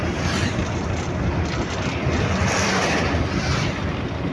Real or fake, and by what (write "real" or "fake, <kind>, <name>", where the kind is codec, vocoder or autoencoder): fake, vocoder, BigVGAN v2